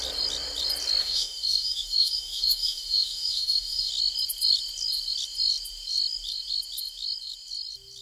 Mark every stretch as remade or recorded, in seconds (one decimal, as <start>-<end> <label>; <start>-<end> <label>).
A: 0.0-1.0 recorded; 1.0-3.9 remade; 3.9-8.0 recorded